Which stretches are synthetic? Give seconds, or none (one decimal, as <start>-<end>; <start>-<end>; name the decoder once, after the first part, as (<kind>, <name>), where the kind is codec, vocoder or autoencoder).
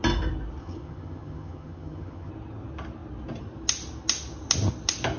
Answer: 0.6-2.3 (vocoder, HiFi-GAN)